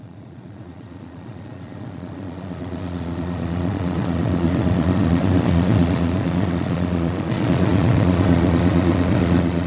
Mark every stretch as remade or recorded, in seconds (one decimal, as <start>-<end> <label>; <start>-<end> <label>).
0.0-9.7 remade